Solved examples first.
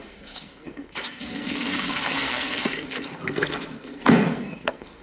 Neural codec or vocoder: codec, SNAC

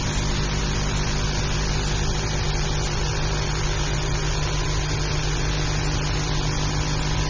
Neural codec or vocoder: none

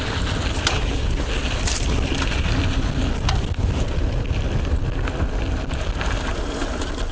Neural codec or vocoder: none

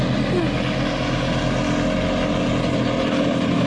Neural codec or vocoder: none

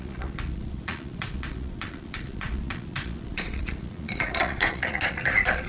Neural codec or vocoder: vocoder, Vocos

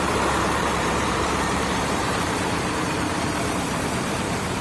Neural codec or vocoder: vocoder, BigVGAN v2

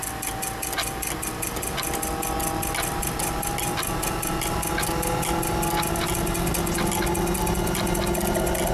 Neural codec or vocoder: none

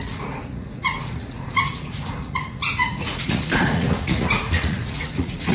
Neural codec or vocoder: vocoder, Vocos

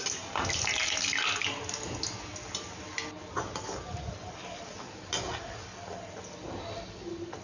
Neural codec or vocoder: none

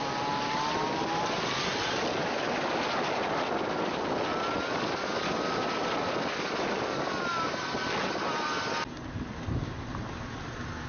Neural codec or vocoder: none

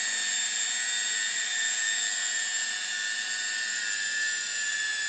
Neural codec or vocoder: none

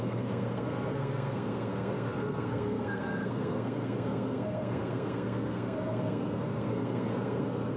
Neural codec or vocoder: codec, SNAC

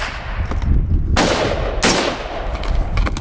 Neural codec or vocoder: none